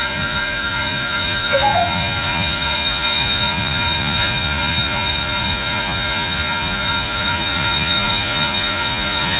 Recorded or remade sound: remade